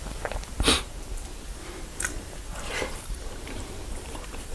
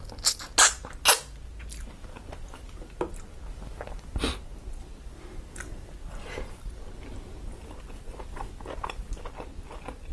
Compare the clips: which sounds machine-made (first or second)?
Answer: first